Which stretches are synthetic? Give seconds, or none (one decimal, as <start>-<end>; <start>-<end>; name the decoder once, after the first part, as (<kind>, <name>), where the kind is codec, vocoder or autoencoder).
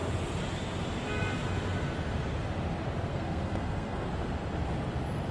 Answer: 3.1-4.1 (codec, SNAC)